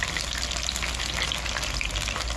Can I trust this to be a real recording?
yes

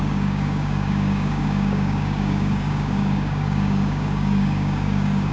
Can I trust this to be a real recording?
no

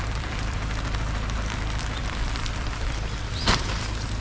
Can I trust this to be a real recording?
no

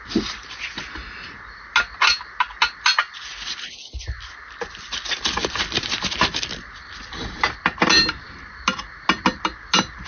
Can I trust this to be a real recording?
yes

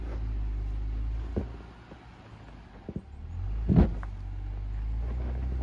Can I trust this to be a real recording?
yes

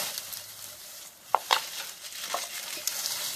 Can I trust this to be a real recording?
no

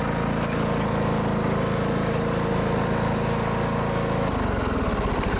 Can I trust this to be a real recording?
yes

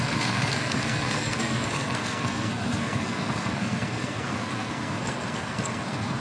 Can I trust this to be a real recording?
no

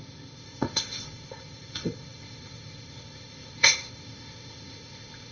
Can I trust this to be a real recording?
no